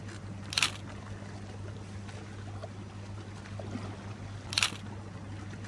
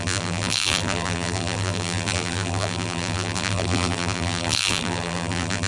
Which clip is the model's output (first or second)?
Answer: second